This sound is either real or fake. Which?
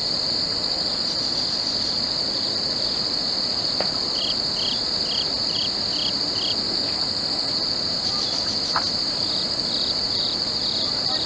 real